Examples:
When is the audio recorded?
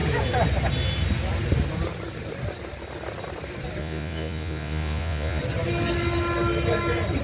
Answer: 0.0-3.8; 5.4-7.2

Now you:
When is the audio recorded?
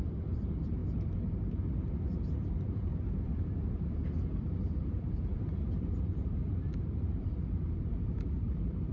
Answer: none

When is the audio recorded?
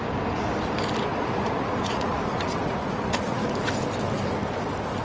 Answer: 0.0-1.1; 3.5-5.0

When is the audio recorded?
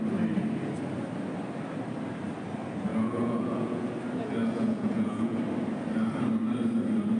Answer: 0.0-2.9; 3.9-4.4; 5.4-7.2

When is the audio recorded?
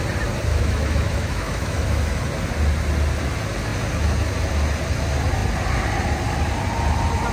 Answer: 0.0-0.5; 2.2-7.3